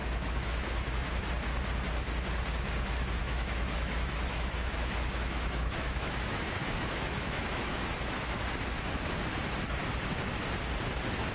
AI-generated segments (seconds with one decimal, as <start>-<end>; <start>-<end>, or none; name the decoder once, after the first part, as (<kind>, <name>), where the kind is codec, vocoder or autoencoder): 0.0-1.2 (autoencoder, DAC-VAE); 3.2-8.4